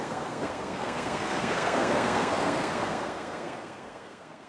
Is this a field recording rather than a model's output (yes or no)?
no